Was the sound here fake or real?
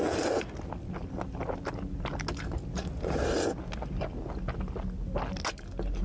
real